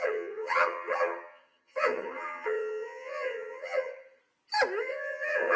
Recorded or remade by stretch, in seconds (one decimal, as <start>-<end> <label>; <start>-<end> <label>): 0.0-4.2 remade; 4.2-4.8 recorded; 4.8-5.6 remade